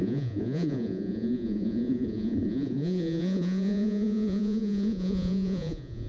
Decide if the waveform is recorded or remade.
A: remade